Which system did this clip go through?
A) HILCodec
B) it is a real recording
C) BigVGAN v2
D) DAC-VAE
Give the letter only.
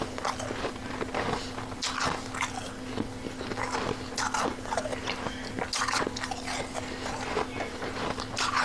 B